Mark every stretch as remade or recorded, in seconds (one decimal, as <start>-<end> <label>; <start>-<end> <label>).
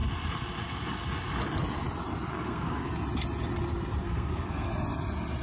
0.0-2.3 recorded; 2.3-2.9 remade; 2.9-4.0 recorded; 4.0-4.7 remade; 4.7-5.4 recorded